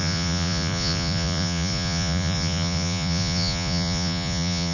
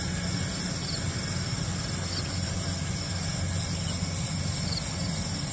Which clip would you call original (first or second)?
second